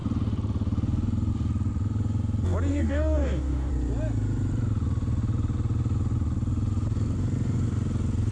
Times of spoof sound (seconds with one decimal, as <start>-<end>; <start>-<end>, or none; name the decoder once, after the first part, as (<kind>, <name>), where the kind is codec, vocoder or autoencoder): 2.7-3.7 (codec, DAC)